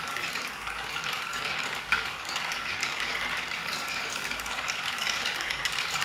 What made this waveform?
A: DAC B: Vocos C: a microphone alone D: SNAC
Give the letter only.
A